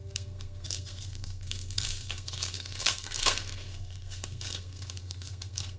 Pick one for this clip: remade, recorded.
remade